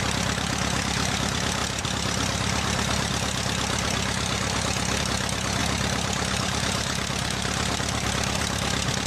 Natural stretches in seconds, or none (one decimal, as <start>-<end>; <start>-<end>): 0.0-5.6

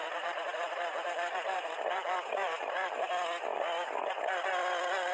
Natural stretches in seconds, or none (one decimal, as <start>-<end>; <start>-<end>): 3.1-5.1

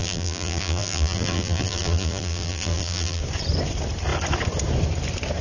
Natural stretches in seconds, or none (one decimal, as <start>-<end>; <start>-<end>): 3.2-5.4

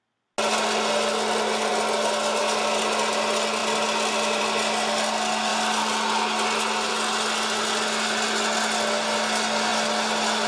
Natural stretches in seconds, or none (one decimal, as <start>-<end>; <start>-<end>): 0.0-10.5